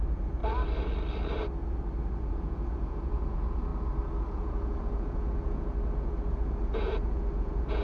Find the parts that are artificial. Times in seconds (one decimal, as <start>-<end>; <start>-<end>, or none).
0.0-0.4; 2.0-3.7; 4.3-7.8